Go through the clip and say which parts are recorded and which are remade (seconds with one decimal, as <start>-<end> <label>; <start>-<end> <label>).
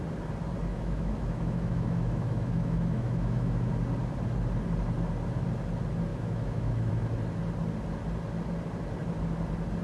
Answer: 0.0-0.7 recorded; 0.7-3.7 remade; 3.7-6.1 recorded; 6.1-6.9 remade; 6.9-9.8 recorded